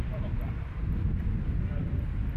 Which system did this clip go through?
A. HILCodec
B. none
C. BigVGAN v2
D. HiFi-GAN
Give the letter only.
C